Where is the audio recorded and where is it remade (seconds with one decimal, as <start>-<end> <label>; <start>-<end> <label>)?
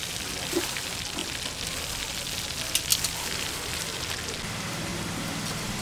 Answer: 0.0-5.8 recorded